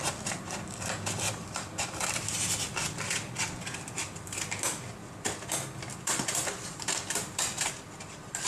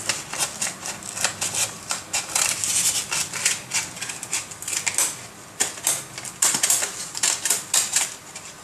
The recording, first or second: second